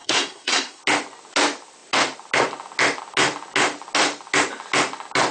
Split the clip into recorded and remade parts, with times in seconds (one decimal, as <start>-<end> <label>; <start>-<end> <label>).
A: 0.0-0.8 remade; 0.8-5.3 recorded